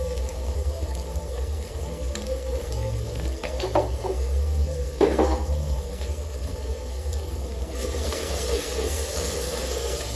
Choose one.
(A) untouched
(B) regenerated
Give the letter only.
B